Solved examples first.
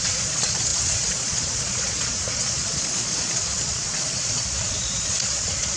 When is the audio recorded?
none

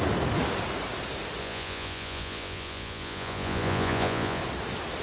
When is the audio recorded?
0.0-1.4; 4.4-5.0

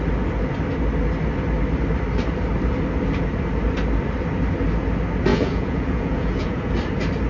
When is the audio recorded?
0.0-5.3; 6.7-7.3

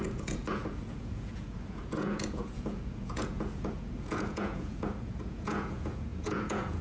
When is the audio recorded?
none